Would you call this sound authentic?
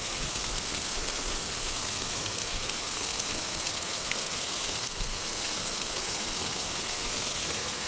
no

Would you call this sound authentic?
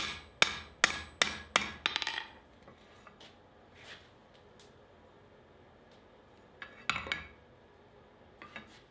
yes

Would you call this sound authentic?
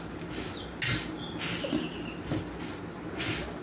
yes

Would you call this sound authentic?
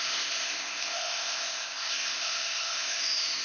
no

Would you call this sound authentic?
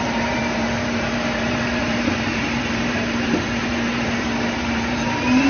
no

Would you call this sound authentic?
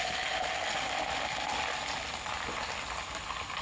yes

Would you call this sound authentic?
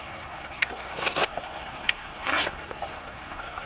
no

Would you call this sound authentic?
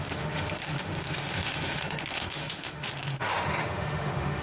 no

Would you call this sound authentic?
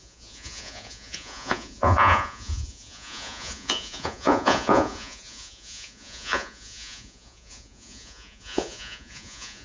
no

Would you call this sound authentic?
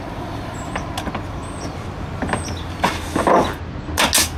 yes